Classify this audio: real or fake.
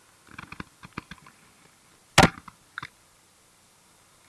real